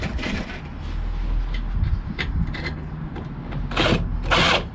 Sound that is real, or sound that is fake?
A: real